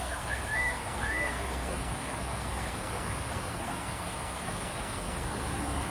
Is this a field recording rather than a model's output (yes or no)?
no